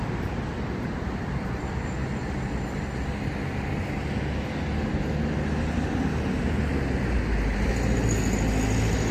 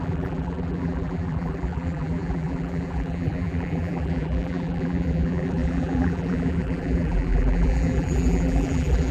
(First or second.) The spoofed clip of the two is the second